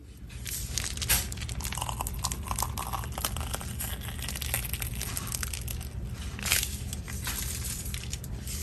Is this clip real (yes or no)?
yes